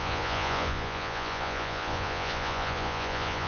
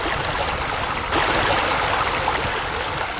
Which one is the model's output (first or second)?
first